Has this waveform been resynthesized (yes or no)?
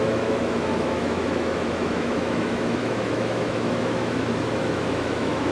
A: yes